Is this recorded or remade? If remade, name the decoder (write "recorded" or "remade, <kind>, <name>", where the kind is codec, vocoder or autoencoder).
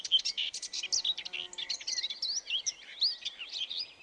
recorded